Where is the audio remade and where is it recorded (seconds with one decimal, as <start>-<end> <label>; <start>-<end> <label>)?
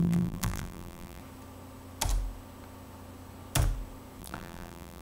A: 0.0-1.2 remade; 1.2-4.2 recorded; 4.2-5.0 remade